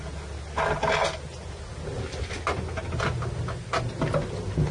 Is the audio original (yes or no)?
yes